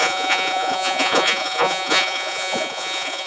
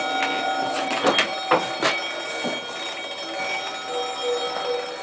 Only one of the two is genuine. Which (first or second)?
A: second